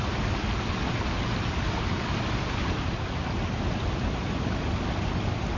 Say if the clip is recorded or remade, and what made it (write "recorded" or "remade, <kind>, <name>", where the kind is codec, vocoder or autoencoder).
recorded